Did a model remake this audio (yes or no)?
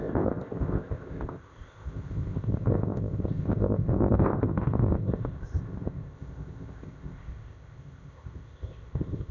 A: yes